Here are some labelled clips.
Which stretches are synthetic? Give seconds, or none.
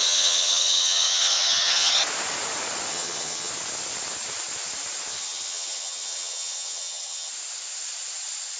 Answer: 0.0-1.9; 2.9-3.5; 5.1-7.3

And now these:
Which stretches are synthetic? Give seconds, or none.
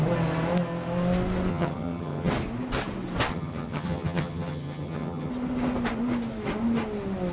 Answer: 1.5-2.3; 3.3-5.3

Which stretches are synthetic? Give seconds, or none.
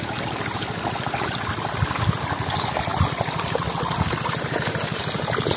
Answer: none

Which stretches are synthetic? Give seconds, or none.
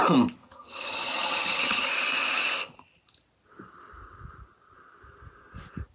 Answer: 0.4-1.9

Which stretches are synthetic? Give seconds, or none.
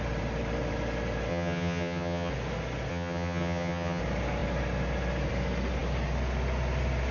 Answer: 1.3-2.3; 2.9-4.0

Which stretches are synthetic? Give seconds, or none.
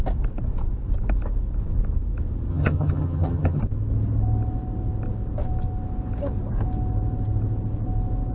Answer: 2.5-3.6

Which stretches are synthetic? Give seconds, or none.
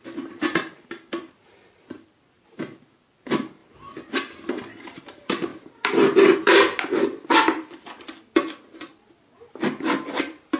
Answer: none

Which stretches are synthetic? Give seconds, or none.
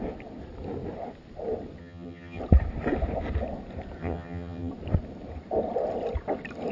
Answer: 1.8-2.4; 4.0-4.7